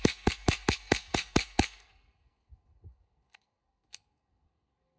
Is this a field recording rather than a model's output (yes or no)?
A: no